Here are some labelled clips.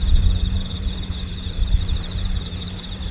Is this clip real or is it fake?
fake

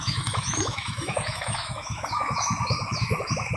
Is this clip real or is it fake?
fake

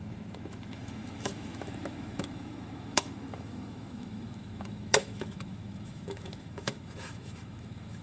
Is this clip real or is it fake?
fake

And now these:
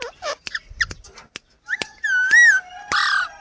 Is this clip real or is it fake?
real